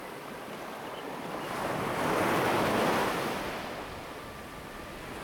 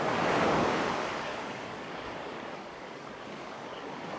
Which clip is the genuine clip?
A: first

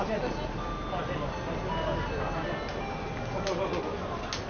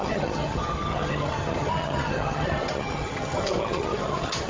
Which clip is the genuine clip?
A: first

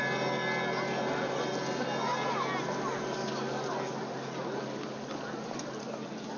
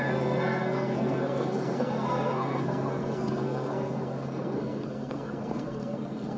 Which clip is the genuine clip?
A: first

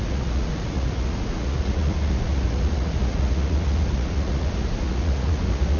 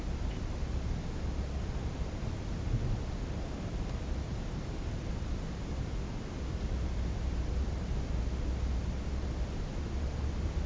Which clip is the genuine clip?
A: second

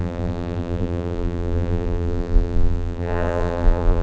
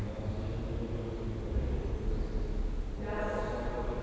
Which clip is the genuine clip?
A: second